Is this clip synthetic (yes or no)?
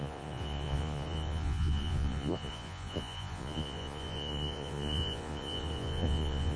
yes